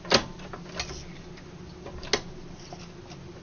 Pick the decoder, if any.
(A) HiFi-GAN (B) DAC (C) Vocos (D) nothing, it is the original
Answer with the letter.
D